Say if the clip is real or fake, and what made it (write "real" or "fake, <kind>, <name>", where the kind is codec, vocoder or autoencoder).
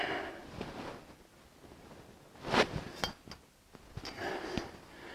real